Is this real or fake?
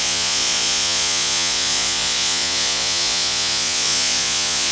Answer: fake